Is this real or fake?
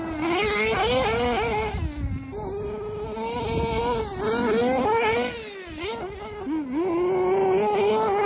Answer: real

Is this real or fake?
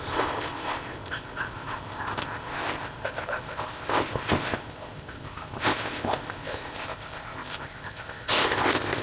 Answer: fake